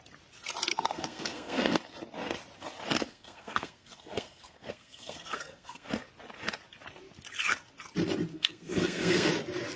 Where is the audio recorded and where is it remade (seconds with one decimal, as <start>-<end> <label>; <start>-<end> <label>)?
0.0-0.7 recorded; 0.7-1.8 remade; 1.8-3.1 recorded; 3.1-5.9 remade; 5.9-8.3 recorded; 8.3-9.3 remade; 9.3-9.8 recorded